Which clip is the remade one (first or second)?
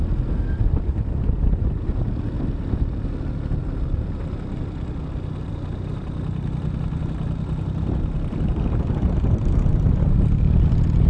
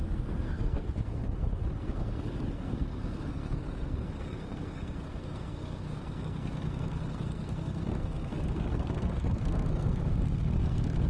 second